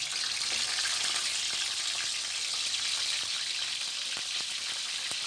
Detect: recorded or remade recorded